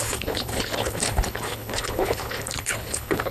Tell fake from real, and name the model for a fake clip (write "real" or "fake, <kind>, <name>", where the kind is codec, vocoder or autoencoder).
fake, codec, HILCodec